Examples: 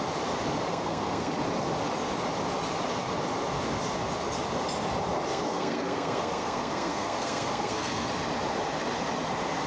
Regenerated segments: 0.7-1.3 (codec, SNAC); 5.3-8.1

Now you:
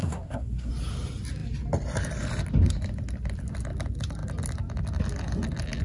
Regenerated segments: 0.0-0.7 (codec, SNAC)

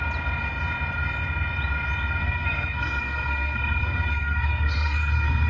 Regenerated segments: 2.2-5.5 (codec, SNAC)